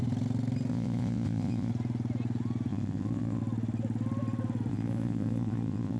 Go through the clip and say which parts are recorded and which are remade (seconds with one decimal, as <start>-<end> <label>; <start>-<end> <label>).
0.0-0.7 recorded; 0.7-1.7 remade; 1.7-2.7 recorded; 2.7-3.4 remade; 3.4-4.7 recorded; 4.7-6.0 remade